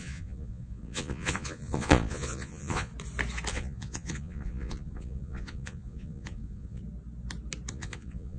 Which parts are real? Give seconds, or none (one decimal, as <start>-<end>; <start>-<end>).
2.9-3.5; 6.8-7.7